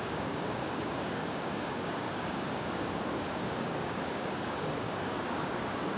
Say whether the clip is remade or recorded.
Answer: remade